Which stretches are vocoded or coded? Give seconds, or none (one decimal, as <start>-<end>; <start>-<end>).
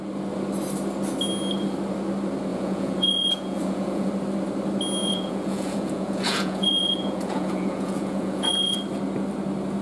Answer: 2.5-4.1; 5.0-8.8